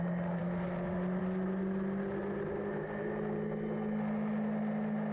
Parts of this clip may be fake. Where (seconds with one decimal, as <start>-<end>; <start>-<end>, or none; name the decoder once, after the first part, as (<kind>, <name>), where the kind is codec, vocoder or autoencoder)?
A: none